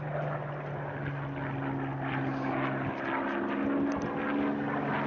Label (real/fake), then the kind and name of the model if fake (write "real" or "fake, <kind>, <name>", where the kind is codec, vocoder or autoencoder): real